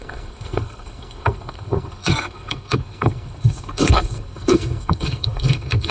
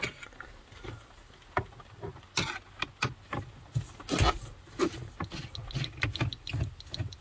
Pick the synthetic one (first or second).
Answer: first